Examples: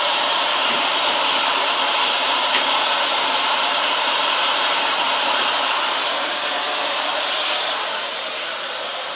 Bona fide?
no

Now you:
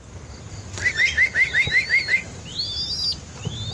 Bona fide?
yes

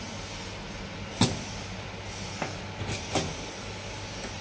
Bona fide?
yes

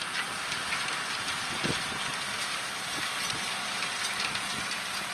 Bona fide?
no